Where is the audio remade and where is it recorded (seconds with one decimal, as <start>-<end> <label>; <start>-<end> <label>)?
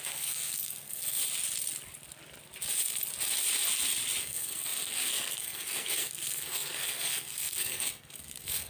0.0-1.2 remade; 1.2-4.2 recorded; 4.2-8.7 remade